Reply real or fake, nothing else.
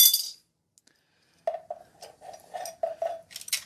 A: real